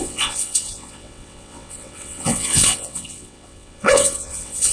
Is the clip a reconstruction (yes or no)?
yes